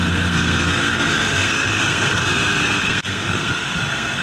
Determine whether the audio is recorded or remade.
remade